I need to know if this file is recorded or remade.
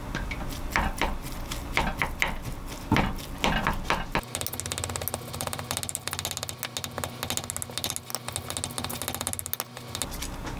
recorded